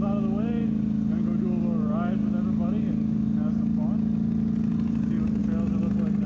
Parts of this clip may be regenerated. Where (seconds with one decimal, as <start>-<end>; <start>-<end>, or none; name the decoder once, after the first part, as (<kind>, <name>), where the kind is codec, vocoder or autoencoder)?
none